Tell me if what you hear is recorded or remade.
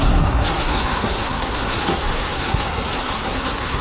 remade